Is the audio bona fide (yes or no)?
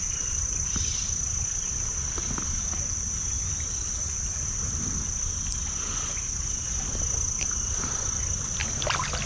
yes